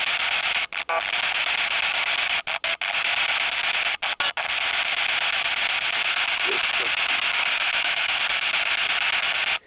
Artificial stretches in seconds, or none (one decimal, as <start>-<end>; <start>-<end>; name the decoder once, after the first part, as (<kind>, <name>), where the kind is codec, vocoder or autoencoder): 7.5-8.2 (autoencoder, DAC-VAE)